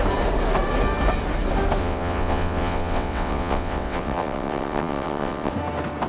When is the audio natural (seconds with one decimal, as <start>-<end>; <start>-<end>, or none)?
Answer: 0.0-1.8; 5.5-6.1